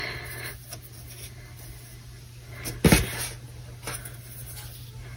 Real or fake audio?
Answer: real